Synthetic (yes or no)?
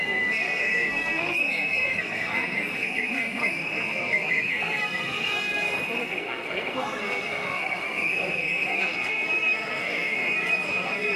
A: yes